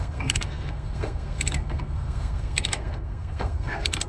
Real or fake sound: fake